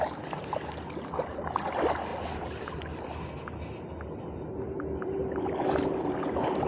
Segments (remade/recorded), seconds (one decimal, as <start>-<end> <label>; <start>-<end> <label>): 0.0-6.7 recorded